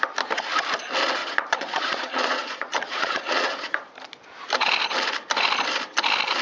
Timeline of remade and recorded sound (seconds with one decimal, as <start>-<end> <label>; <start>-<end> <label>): 0.0-1.2 recorded; 1.2-3.9 remade; 3.9-6.4 recorded

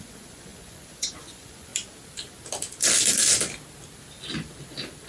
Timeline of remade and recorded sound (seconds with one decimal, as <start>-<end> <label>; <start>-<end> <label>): 0.0-1.7 remade; 1.7-5.1 recorded

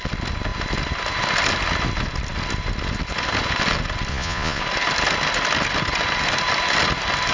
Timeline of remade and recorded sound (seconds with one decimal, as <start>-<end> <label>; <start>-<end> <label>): 0.0-4.1 recorded; 4.1-4.6 remade; 4.6-7.3 recorded